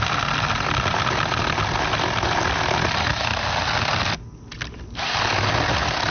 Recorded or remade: recorded